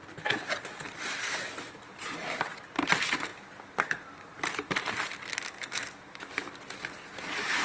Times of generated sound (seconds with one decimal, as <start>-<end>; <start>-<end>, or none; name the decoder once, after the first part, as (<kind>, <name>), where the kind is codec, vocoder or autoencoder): none

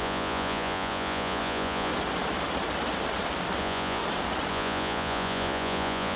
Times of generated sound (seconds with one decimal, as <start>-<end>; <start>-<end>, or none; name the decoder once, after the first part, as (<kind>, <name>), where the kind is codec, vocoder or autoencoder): 0.0-1.9 (vocoder, Vocos); 3.6-4.0; 4.5-6.2